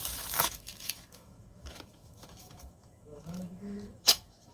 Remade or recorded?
remade